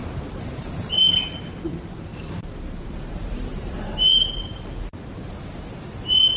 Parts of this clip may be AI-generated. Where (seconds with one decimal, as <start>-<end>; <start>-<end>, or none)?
0.0-0.9